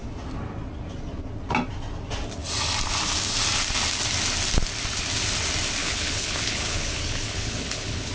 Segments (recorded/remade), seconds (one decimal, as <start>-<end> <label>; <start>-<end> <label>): 0.0-5.8 recorded; 5.8-8.1 remade